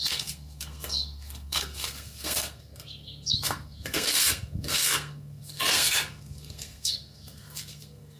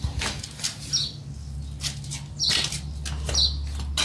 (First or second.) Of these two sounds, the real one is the second